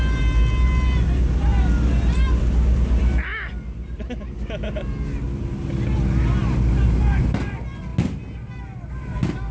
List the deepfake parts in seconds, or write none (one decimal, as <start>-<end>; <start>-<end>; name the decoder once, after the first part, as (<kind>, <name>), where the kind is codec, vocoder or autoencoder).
none